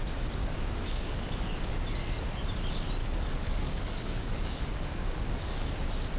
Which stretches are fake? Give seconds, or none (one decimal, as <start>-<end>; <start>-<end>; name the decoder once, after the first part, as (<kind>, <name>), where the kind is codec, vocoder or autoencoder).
0.4-1.7 (codec, DAC); 3.0-5.8